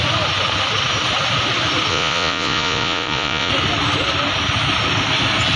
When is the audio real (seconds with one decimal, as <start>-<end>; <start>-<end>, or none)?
0.0-1.9; 3.5-5.6